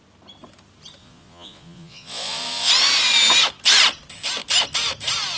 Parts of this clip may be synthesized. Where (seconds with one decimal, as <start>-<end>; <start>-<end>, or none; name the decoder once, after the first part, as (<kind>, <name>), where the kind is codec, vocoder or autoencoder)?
1.0-2.7 (vocoder, Vocos)